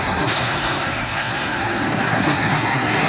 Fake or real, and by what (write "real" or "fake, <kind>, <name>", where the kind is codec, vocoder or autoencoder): fake, codec, SNAC